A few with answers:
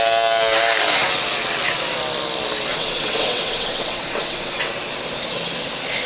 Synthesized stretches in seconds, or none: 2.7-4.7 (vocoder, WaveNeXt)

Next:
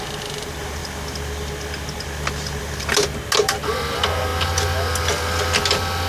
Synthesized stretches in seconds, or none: none

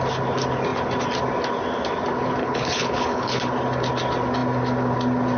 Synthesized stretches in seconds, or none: 2.4-3.4 (codec, HILCodec)

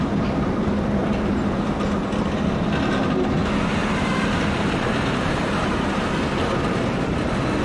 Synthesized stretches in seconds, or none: 1.0-1.7 (vocoder, BigVGAN v2); 3.8-6.1

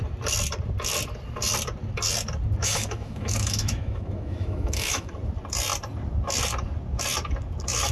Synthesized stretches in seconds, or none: 2.6-5.1 (autoencoder, DAC-VAE)

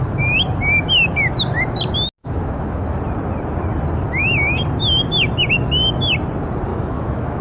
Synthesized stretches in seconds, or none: 2.2-3.0 (autoencoder, DAC-VAE); 6.7-7.4

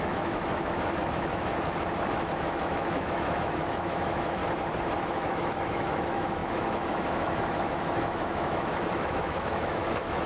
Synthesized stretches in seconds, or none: 0.0-1.5 (autoencoder, DAC-VAE); 2.1-4.4; 5.0-10.3

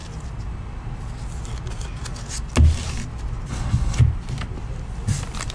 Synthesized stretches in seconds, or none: 3.5-4.0 (codec, HILCodec)